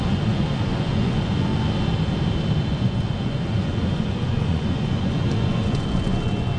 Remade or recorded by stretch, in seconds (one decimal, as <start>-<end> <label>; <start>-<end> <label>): 0.0-1.5 remade; 1.5-2.7 recorded; 2.7-6.6 remade